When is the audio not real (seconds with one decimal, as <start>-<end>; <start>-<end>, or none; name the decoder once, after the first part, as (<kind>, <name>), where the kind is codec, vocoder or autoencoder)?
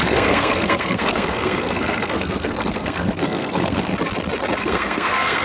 0.0-3.9 (codec, SNAC); 4.6-5.4